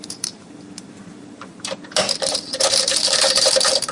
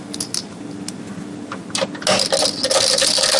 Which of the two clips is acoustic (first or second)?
second